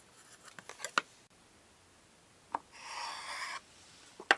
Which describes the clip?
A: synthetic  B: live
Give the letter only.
B